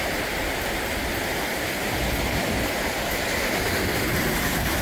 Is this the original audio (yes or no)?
yes